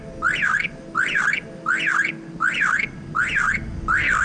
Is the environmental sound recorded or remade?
recorded